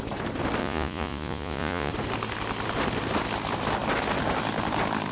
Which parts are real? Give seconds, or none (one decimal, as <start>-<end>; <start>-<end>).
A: 0.0-0.6; 1.9-5.1